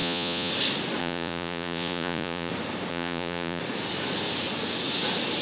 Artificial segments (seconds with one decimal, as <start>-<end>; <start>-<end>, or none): 0.0-0.5; 1.0-2.5; 2.9-3.6